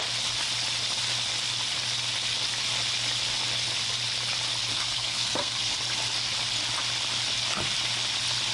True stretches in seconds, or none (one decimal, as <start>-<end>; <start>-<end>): 0.0-4.7; 5.8-8.5